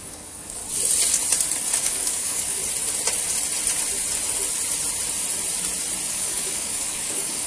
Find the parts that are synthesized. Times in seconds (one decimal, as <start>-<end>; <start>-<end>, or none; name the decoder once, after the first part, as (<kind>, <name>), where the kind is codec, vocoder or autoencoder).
0.0-0.6 (codec, DAC); 1.8-2.6; 6.1-7.5